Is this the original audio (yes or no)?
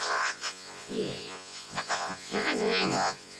no